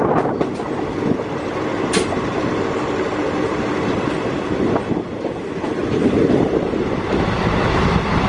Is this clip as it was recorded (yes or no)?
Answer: yes